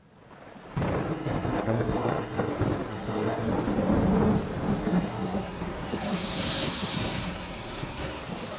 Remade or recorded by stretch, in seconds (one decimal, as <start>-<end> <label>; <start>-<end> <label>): 0.0-1.1 recorded; 1.1-2.5 remade; 2.5-2.9 recorded; 2.9-3.5 remade; 3.5-4.8 recorded; 4.8-8.2 remade; 8.2-8.6 recorded